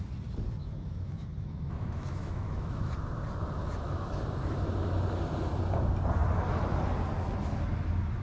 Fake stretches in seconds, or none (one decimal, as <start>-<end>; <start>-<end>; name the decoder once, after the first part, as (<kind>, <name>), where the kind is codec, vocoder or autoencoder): 0.6-2.9 (autoencoder, DAC-VAE); 3.6-4.2